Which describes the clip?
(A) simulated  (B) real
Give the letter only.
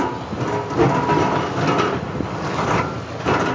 B